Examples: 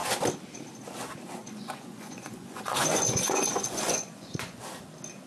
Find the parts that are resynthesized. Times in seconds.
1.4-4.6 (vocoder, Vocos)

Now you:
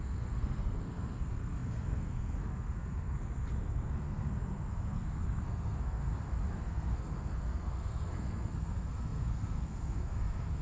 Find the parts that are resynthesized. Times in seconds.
0.0-6.0 (codec, SNAC); 6.5-10.6

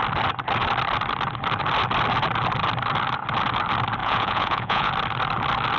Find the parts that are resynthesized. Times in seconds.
4.0-4.9 (vocoder, Vocos)

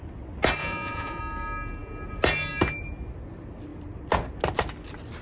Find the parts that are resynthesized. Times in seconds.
0.6-1.2 (vocoder, Vocos)